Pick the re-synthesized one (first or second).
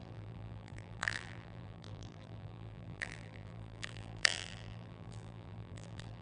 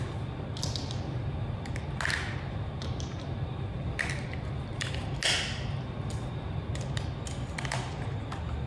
first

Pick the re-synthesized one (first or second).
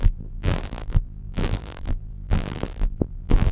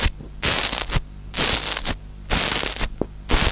first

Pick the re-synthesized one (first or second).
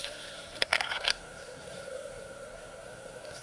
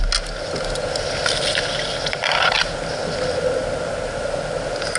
first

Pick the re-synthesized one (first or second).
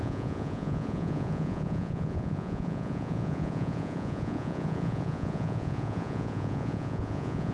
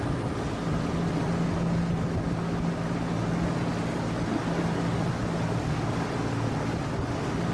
first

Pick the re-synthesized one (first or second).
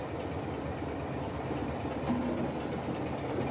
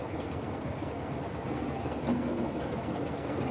second